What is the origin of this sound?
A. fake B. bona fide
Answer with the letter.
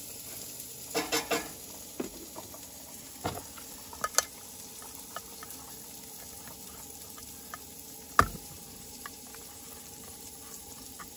B